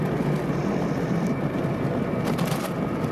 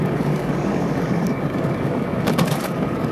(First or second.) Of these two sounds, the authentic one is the first